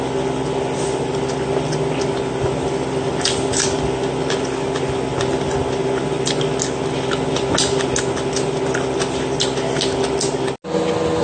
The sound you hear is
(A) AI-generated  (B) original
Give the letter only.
B